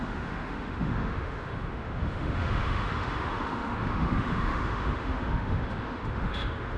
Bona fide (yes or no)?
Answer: no